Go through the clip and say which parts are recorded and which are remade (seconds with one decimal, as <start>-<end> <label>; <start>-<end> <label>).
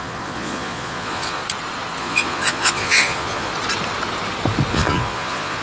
0.0-1.4 remade; 1.4-2.0 recorded; 2.0-3.5 remade; 3.5-4.7 recorded; 4.7-5.6 remade